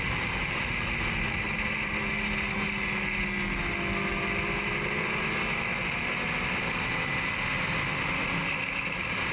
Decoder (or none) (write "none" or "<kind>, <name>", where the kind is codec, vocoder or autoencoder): none